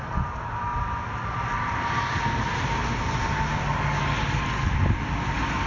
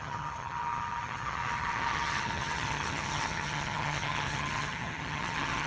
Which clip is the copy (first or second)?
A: second